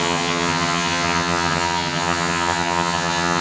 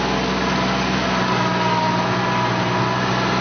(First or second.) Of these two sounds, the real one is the second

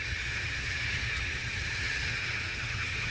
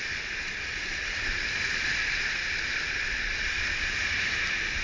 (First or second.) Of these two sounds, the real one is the second